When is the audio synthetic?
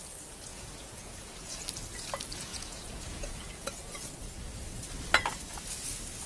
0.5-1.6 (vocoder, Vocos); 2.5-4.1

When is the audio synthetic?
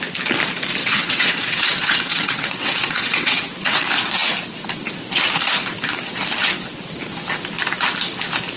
0.8-3.8 (vocoder, WaveNeXt)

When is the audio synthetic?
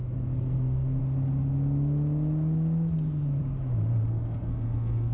0.0-1.0 (codec, SNAC); 4.1-5.1